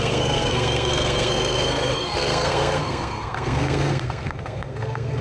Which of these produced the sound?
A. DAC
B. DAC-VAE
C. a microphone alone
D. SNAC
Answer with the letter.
D